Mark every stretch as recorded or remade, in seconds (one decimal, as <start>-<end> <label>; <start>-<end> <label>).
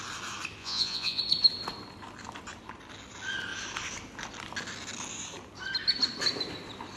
0.0-0.6 recorded; 0.6-1.2 remade; 1.2-7.0 recorded